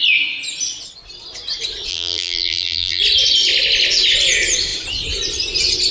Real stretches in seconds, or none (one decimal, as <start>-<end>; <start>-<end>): 0.0-1.9; 3.0-5.9